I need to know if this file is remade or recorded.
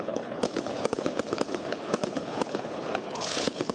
remade